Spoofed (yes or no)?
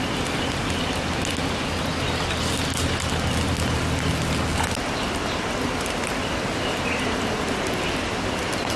no